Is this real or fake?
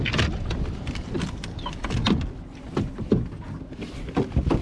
real